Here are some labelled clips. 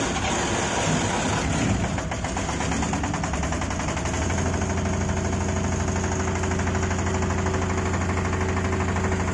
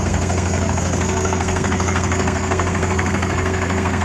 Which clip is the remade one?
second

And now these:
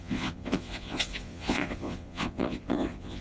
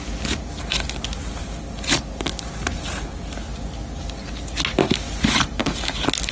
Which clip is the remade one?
first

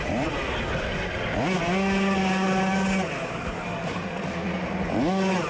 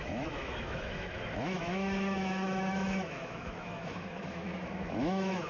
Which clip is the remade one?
second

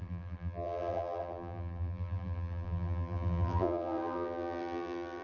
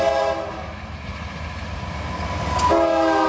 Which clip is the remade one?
first